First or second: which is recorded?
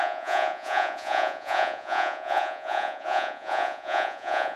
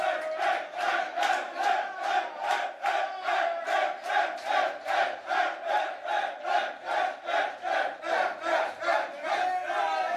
second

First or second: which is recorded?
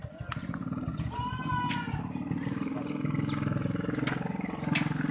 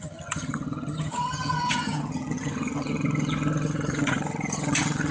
first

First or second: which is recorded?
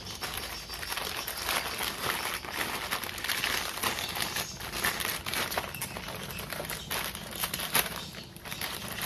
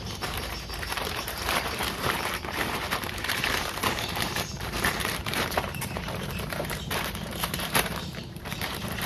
first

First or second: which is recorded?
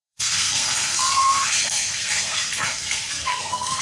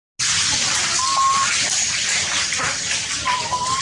second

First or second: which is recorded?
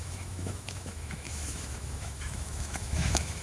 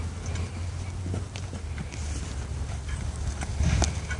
second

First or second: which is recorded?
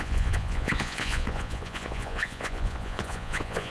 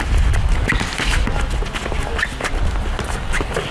second